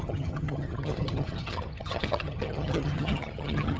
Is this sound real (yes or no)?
no